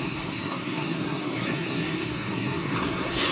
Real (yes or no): no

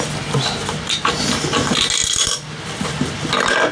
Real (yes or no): yes